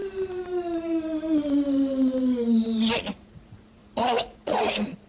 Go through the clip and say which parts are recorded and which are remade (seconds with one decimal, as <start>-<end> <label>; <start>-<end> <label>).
0.0-3.1 recorded; 3.1-5.1 remade

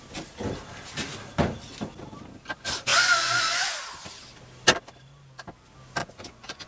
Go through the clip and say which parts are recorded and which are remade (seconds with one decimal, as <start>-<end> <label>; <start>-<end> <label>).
0.0-2.9 recorded; 2.9-3.8 remade; 3.8-6.0 recorded; 6.0-6.7 remade